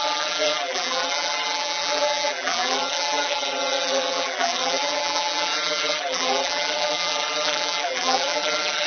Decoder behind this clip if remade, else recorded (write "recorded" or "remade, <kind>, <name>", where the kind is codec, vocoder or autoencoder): remade, vocoder, BigVGAN v2